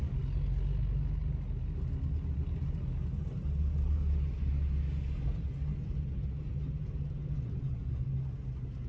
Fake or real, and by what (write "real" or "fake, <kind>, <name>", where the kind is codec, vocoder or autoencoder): real